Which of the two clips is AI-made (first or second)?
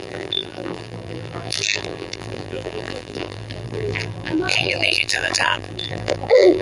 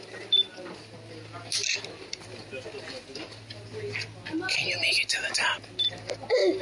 first